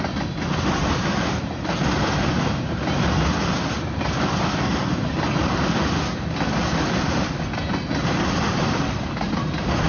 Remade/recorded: recorded